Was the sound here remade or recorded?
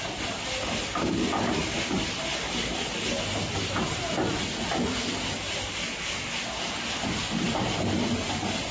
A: recorded